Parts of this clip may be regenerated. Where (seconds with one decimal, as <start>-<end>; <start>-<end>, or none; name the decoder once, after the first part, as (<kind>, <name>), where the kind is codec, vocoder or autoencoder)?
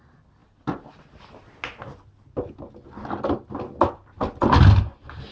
none